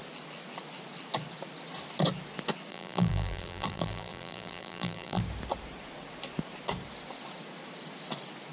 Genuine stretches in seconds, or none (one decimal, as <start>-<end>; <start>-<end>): 0.0-2.7; 5.2-8.5